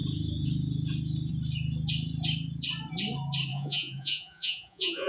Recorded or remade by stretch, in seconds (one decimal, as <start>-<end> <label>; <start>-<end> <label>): 0.0-3.5 recorded; 3.5-5.1 remade